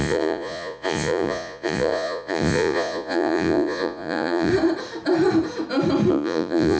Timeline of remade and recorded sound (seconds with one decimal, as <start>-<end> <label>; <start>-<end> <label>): 0.0-4.5 remade; 4.5-6.1 recorded; 6.1-6.8 remade